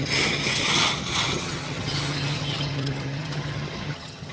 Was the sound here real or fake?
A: fake